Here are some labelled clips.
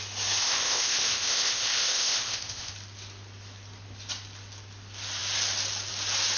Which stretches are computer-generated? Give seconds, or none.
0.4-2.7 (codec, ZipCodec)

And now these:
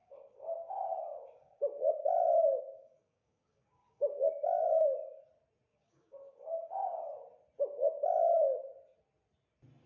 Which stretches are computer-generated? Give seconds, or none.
0.0-5.2 (codec, DAC); 5.7-7.0

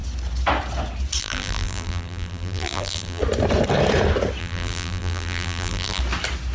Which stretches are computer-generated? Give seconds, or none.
1.2-3.2 (vocoder, BigVGAN v2); 4.4-6.0

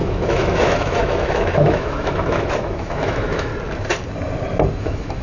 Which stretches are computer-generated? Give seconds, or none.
0.0-3.5 (autoencoder, DAC-VAE); 4.8-5.2

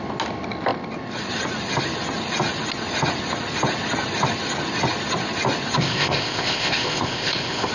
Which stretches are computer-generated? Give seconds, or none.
5.8-7.7 (codec, ZipCodec)

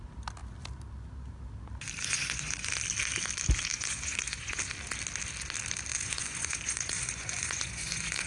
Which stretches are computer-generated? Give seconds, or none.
2.0-2.7 (vocoder, Vocos); 3.7-4.6; 5.9-8.3